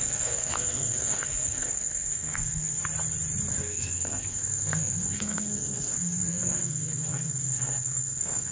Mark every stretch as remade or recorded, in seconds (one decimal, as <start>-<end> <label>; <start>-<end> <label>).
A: 0.0-2.8 remade; 2.8-3.5 recorded; 3.5-8.5 remade